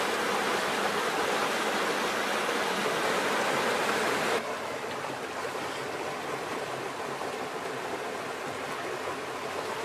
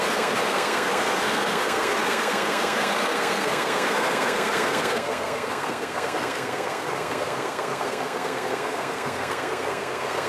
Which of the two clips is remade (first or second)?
second